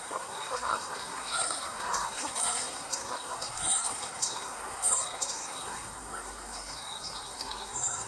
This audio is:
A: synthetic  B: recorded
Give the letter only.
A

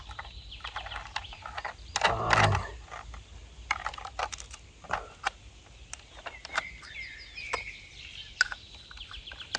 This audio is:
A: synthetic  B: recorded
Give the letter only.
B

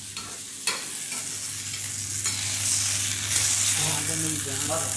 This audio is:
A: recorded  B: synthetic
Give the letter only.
A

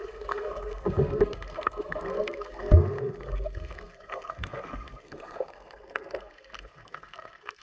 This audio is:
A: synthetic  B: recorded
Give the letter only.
A